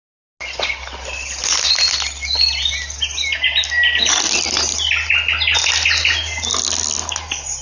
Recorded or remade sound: recorded